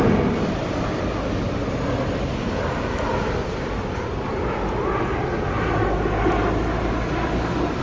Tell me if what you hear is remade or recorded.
recorded